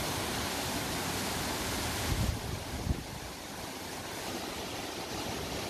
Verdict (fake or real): real